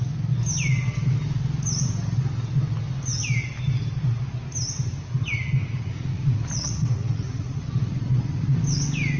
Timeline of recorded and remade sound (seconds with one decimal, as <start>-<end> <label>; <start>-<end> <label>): 0.0-5.6 recorded; 5.6-8.6 remade; 8.6-9.2 recorded